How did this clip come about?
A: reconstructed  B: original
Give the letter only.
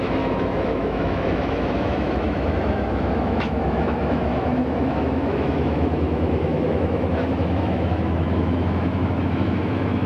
A